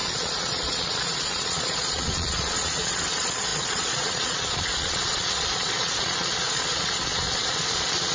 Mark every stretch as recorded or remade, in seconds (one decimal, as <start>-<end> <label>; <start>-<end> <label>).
0.0-8.1 remade